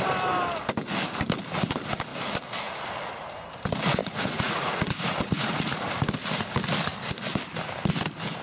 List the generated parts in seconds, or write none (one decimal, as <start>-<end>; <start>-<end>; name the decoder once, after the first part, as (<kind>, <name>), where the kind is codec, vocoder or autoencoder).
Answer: 4.0-5.9 (vocoder, Vocos)